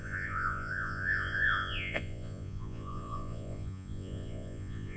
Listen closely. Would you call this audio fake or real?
fake